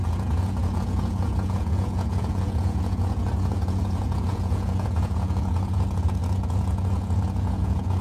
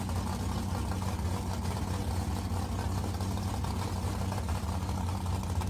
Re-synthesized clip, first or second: first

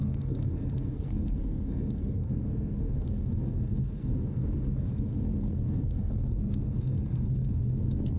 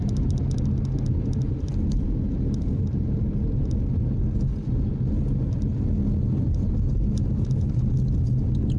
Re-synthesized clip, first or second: first